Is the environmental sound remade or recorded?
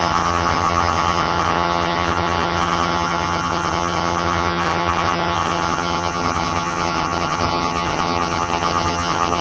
remade